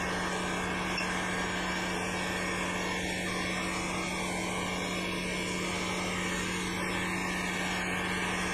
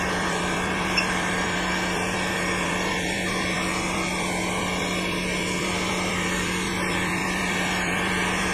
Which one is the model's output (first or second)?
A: second